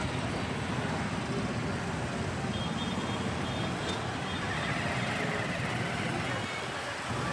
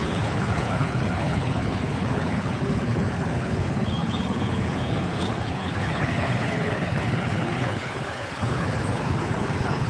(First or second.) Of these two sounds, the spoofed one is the second